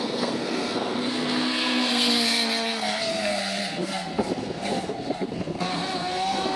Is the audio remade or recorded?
remade